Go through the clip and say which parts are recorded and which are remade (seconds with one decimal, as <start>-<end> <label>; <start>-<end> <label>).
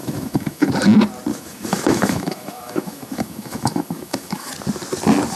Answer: 0.0-0.7 remade; 0.7-1.3 recorded; 1.3-4.5 remade; 4.5-5.4 recorded